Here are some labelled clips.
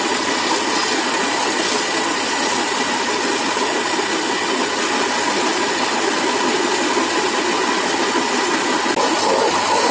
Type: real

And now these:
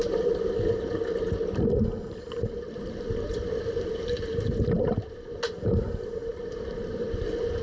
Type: real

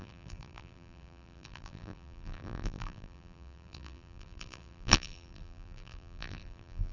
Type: fake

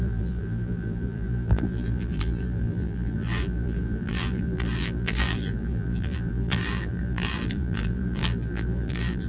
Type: fake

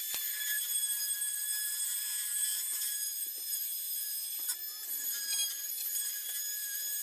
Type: fake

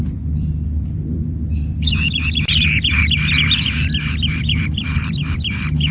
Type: fake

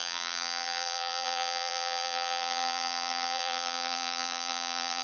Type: fake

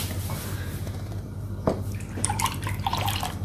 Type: fake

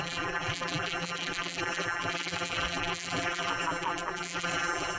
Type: fake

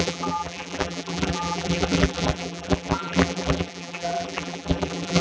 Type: fake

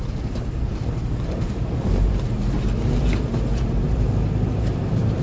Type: fake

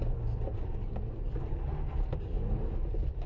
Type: real